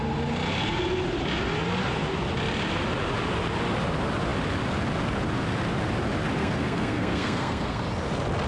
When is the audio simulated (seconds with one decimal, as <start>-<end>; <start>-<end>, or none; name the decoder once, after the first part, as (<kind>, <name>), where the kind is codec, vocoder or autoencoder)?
6.4-7.8 (codec, SNAC)